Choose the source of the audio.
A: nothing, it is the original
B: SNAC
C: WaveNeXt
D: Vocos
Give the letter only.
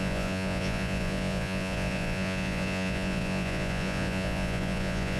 D